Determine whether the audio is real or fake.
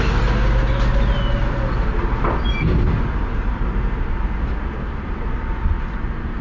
real